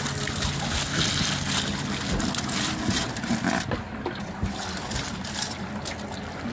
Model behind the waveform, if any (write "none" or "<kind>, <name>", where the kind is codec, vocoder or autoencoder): none